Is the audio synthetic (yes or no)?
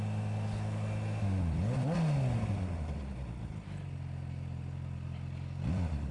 no